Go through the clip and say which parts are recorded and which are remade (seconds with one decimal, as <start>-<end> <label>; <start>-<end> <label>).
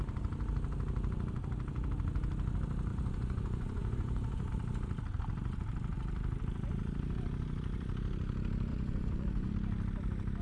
0.0-2.9 recorded; 2.9-4.5 remade; 4.5-8.7 recorded; 8.7-9.5 remade; 9.5-10.4 recorded